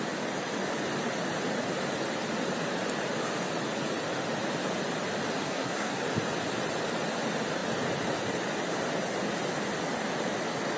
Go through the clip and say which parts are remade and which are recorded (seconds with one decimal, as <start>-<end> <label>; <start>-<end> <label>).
0.0-5.4 recorded; 5.4-6.0 remade; 6.0-10.8 recorded